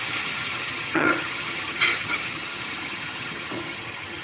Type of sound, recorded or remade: remade